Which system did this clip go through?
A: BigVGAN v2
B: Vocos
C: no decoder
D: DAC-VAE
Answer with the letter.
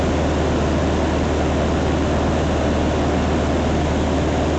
C